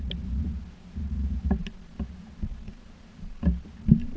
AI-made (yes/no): no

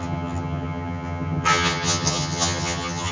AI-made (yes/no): yes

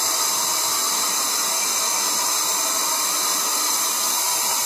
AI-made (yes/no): no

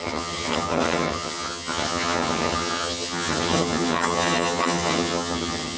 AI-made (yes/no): yes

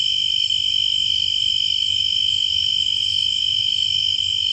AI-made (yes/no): no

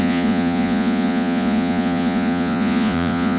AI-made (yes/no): yes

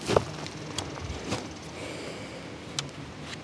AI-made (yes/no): no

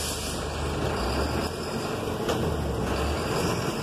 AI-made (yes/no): no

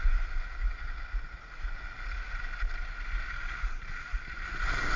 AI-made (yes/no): no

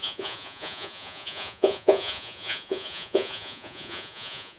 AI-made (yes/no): yes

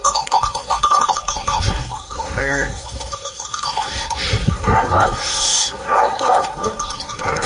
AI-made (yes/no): yes